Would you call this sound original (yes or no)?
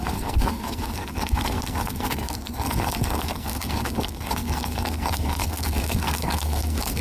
no